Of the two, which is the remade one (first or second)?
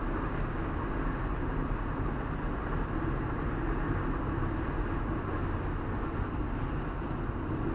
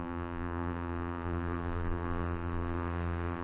second